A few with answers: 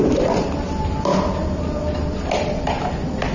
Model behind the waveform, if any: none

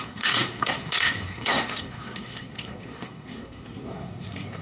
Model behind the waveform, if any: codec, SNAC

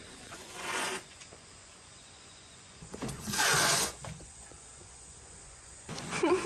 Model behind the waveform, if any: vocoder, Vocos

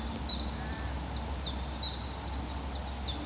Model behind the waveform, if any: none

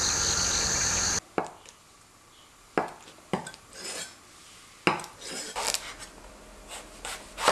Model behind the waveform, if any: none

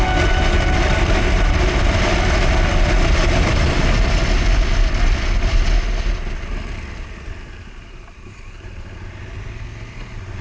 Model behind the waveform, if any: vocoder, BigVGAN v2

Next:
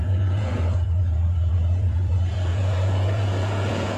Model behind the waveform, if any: vocoder, Vocos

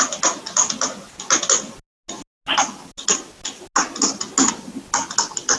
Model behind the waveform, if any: none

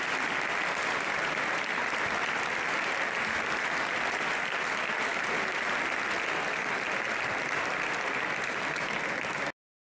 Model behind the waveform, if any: none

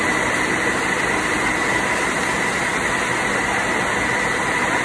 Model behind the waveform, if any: none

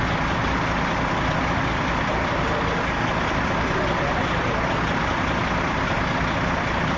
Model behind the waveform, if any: none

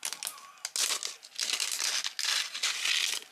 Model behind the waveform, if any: none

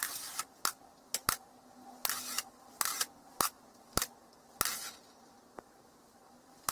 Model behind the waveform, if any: none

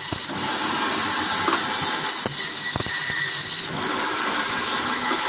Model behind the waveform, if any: none